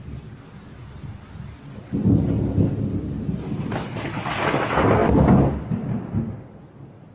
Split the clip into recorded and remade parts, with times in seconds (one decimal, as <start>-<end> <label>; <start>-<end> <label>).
0.0-7.1 recorded